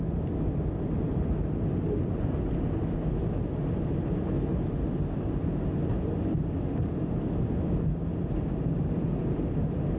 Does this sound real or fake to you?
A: real